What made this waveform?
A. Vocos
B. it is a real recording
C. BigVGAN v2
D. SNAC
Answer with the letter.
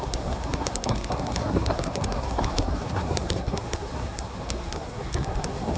D